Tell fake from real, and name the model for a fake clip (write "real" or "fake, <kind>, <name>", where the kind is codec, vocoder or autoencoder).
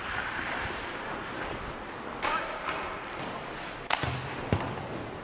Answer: real